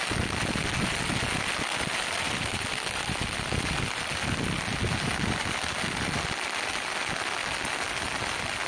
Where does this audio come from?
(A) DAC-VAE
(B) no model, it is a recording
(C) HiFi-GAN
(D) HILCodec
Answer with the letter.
B